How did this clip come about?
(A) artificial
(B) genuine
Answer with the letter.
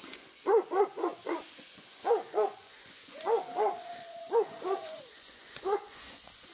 A